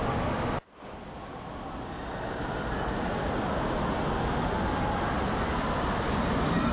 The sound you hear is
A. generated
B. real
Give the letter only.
B